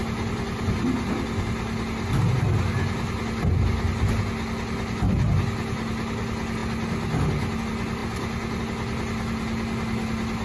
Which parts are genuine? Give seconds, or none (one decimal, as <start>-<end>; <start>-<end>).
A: 0.0-10.4